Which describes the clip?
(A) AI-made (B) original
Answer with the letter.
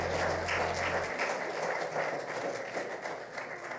B